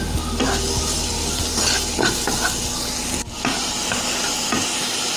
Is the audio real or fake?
real